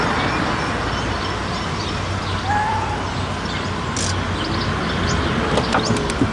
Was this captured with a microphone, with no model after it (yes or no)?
yes